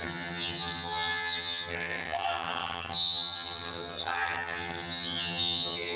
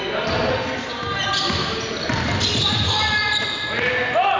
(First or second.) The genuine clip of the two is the second